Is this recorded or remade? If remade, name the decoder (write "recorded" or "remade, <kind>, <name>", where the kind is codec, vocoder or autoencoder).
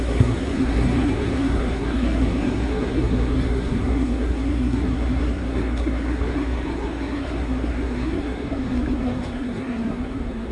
remade, codec, SNAC